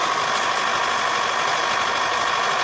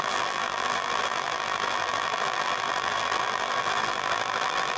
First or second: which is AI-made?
second